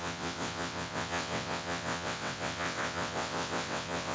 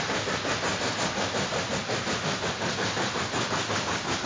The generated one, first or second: first